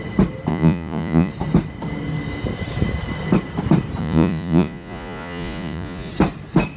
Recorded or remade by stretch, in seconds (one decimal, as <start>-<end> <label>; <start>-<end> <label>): 0.0-0.5 recorded; 0.5-1.3 remade; 1.3-4.0 recorded; 4.0-6.1 remade; 6.1-6.8 recorded